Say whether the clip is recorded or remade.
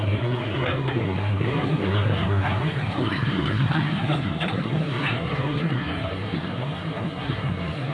remade